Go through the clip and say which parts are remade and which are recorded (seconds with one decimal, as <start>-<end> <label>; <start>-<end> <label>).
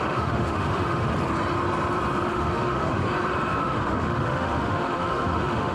0.0-1.1 remade; 1.1-2.3 recorded; 2.3-3.0 remade; 3.0-3.6 recorded; 3.6-5.7 remade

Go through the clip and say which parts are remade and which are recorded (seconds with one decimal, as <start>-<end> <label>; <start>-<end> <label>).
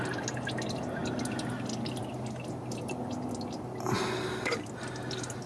0.0-5.5 recorded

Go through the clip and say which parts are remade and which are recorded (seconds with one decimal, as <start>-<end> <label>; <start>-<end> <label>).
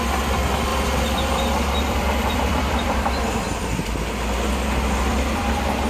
0.0-0.7 recorded; 0.7-3.8 remade; 3.8-5.1 recorded; 5.1-5.9 remade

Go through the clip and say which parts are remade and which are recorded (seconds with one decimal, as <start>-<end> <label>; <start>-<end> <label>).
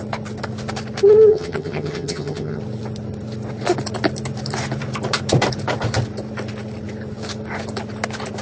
0.0-1.3 recorded; 1.3-2.6 remade; 2.6-8.4 recorded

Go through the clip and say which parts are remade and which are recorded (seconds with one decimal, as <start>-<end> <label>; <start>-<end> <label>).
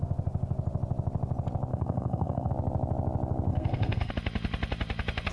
0.0-1.7 recorded; 1.7-2.5 remade; 2.5-3.5 recorded; 3.5-4.1 remade; 4.1-5.3 recorded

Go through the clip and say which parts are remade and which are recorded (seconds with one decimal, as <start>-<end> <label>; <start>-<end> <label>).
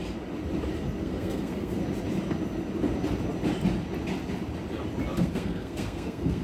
0.0-1.0 recorded; 1.0-1.8 remade; 1.8-5.2 recorded; 5.2-6.4 remade